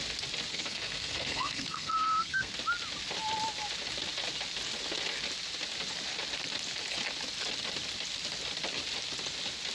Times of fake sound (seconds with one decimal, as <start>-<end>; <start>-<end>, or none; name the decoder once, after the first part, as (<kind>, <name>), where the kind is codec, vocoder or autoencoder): 0.5-2.5 (codec, SNAC)